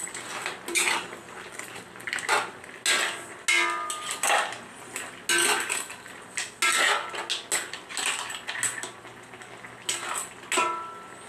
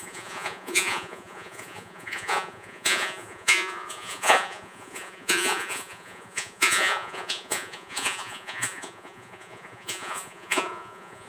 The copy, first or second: second